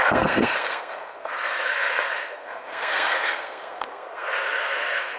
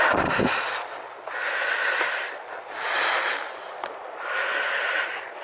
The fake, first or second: first